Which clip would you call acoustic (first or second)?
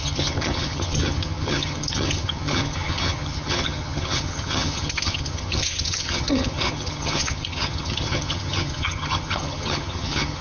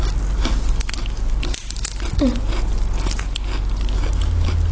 second